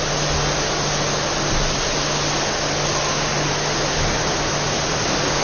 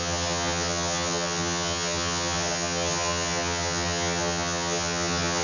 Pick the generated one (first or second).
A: second